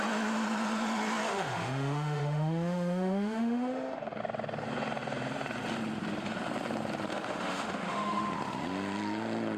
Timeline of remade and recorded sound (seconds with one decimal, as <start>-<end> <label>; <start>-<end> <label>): 0.0-1.3 recorded; 1.3-4.2 remade; 4.2-7.1 recorded; 7.1-8.3 remade; 8.3-9.6 recorded